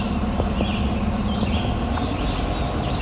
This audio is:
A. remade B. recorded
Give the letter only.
B